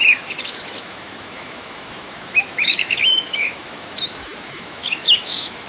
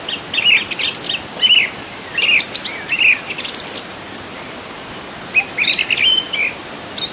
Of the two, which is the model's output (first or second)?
first